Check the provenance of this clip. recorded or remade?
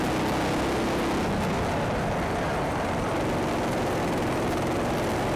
recorded